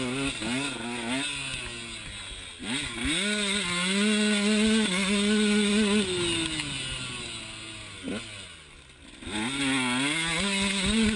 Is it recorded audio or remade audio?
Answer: recorded